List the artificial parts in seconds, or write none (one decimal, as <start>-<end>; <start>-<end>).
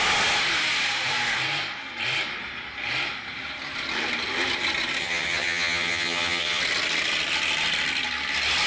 5.0-6.6